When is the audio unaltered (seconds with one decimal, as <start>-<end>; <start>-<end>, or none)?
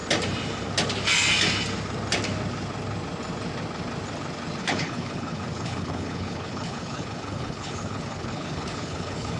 0.0-4.6